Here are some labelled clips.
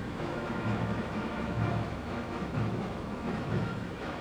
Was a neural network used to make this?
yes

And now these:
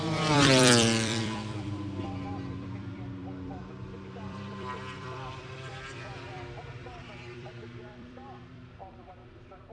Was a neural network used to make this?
yes